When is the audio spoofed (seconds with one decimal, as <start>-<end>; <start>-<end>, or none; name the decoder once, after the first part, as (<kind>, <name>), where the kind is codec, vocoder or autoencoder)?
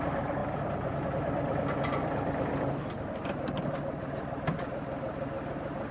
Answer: 0.4-1.1 (vocoder, BigVGAN v2)